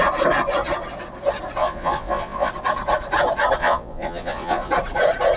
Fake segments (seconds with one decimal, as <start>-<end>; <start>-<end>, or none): 1.6-2.5; 3.6-4.7